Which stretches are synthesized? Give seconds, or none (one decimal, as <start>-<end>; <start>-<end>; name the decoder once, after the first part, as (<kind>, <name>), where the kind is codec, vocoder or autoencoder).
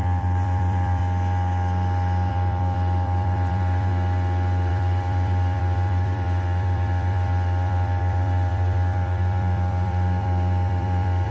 0.0-1.0 (vocoder, BigVGAN v2); 2.3-3.9; 4.7-11.3